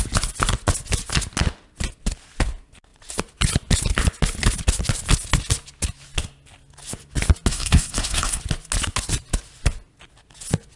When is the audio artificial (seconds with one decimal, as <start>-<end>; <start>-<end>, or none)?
7.5-8.4